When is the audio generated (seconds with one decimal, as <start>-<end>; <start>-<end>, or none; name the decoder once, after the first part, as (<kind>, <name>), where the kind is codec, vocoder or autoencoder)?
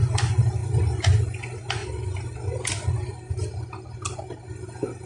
0.6-1.4 (vocoder, BigVGAN v2)